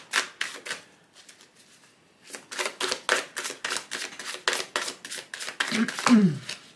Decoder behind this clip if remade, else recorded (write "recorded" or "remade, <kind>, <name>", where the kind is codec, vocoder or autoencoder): recorded